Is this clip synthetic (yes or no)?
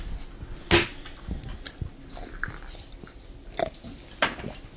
no